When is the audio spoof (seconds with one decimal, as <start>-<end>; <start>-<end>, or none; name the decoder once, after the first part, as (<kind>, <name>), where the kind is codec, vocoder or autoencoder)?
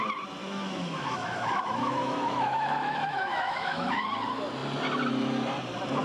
0.4-4.0 (autoencoder, DAC-VAE)